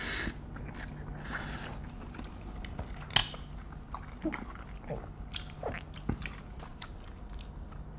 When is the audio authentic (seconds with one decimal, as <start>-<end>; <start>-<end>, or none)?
0.0-8.0